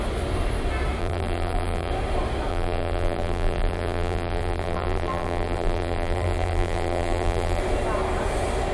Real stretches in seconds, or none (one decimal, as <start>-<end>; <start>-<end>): 0.0-1.0; 1.9-2.5; 7.6-8.7